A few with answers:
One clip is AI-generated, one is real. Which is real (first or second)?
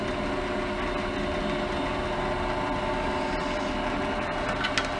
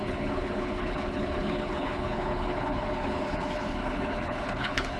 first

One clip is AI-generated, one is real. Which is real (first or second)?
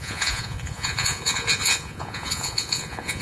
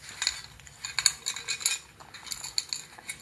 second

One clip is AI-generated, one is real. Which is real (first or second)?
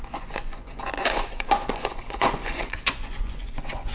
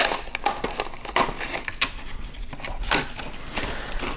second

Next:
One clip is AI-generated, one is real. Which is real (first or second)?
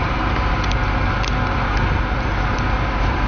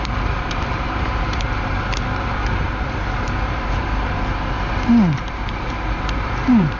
first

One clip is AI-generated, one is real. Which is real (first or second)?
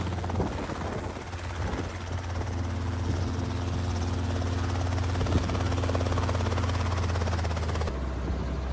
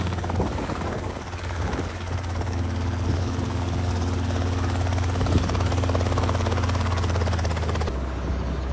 first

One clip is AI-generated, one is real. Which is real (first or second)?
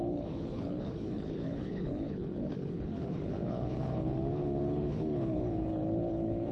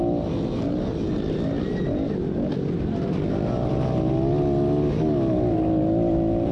second